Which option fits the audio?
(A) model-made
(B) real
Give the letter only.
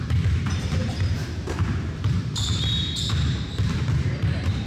A